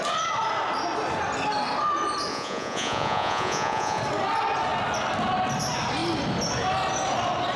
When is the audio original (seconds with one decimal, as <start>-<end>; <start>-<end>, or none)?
0.0-2.3; 4.0-7.6